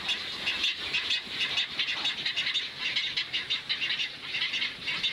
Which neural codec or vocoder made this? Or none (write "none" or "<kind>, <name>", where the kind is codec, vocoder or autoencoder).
none